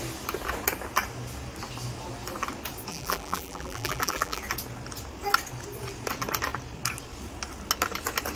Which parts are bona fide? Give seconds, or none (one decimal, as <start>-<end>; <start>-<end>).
0.0-2.9; 4.4-8.4